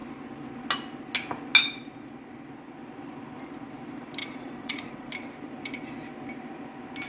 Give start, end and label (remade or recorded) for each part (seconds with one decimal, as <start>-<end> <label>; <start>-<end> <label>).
0.0-4.2 recorded; 4.2-5.1 remade; 5.1-7.1 recorded